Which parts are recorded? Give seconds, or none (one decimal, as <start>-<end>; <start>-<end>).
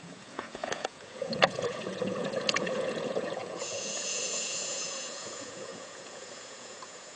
none